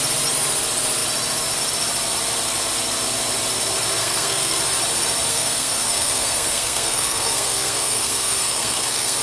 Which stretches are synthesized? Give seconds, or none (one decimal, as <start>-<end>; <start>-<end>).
4.0-4.6; 5.3-9.2